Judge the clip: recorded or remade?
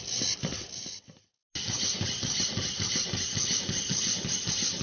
recorded